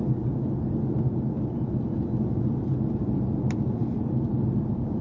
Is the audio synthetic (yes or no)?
no